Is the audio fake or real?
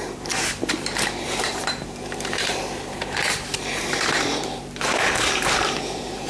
fake